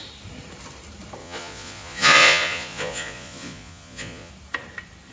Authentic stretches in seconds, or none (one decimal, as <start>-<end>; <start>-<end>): 0.0-1.2; 4.3-5.1